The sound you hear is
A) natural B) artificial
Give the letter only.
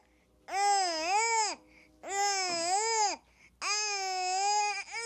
A